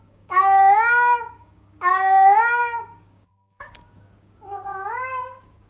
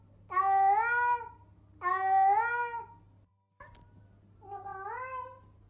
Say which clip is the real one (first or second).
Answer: second